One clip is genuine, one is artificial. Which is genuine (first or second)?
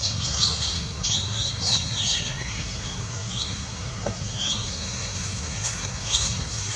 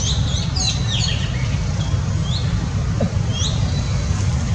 second